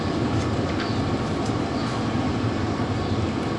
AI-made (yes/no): no